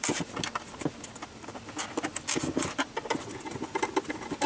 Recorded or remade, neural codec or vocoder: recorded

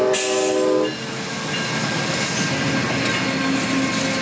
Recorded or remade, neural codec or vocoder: recorded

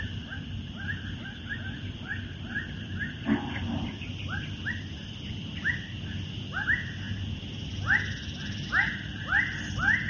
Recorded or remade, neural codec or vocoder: recorded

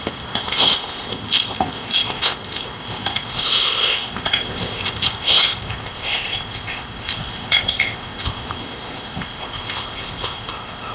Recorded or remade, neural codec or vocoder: remade, codec, ZipCodec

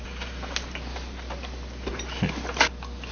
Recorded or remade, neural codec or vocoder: recorded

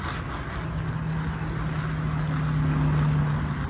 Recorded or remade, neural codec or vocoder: recorded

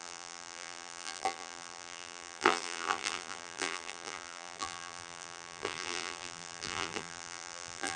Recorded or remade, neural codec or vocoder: remade, vocoder, BigVGAN v2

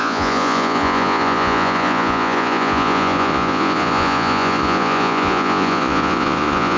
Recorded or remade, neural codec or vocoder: remade, vocoder, Vocos